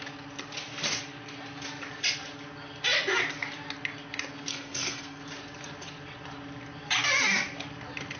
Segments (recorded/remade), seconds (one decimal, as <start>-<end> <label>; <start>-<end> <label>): 0.0-4.5 recorded; 4.5-5.2 remade; 5.2-8.2 recorded